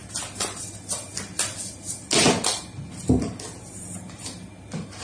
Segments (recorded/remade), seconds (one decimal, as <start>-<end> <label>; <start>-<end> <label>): 0.0-5.0 recorded